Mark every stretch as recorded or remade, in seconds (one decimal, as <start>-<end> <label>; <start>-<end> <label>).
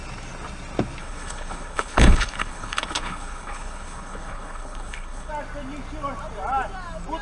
0.0-1.0 recorded; 1.0-5.3 remade; 5.3-7.2 recorded